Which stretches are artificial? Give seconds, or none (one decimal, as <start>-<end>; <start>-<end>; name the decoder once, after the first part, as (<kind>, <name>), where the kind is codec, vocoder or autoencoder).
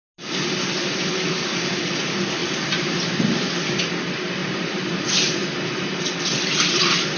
2.4-3.3 (vocoder, BigVGAN v2); 4.4-6.0